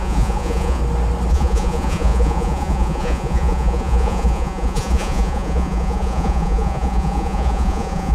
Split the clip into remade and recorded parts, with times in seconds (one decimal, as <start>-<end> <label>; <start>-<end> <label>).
0.0-0.8 remade; 0.8-1.3 recorded; 1.3-8.1 remade

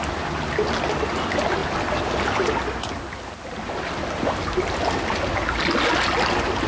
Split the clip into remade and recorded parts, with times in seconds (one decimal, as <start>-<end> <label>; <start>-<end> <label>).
0.0-6.7 recorded

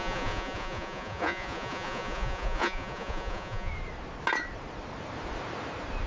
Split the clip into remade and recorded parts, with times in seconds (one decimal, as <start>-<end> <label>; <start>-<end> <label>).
0.0-3.7 remade; 3.7-6.1 recorded

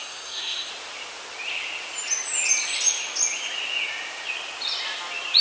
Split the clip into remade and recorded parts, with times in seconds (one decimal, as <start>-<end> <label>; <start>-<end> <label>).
0.0-0.7 remade; 0.7-5.4 recorded

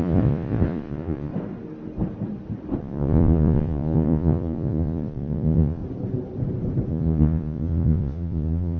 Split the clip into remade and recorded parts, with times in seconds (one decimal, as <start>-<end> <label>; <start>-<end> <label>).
0.0-1.3 remade; 1.3-2.8 recorded; 2.8-5.8 remade; 5.8-6.9 recorded; 6.9-8.8 remade

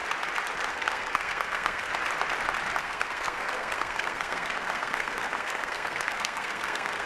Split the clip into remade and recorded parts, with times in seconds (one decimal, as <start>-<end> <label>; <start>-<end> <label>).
0.0-0.7 recorded; 0.7-1.9 remade; 1.9-2.8 recorded; 2.8-7.1 remade